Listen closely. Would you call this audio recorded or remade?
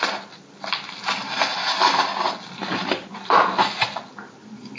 recorded